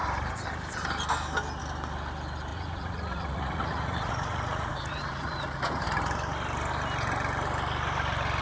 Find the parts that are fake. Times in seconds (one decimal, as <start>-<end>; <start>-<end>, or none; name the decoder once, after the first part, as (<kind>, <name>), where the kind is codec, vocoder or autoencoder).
2.5-5.8 (vocoder, Vocos)